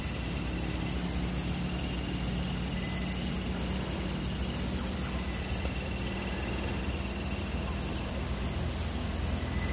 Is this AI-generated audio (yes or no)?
no